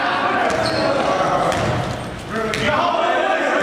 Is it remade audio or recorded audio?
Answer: recorded